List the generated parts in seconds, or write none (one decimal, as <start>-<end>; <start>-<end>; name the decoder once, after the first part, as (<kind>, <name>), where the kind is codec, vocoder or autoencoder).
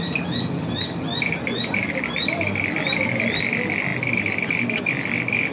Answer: none